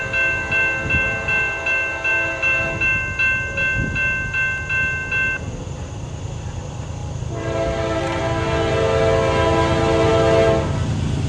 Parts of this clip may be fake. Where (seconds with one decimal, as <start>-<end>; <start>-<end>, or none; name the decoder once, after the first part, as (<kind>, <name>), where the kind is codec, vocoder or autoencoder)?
7.0-8.2 (vocoder, BigVGAN v2)